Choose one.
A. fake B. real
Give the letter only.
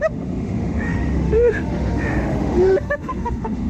A